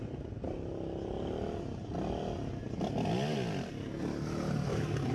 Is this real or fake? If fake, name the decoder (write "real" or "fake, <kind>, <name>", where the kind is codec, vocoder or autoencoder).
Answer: real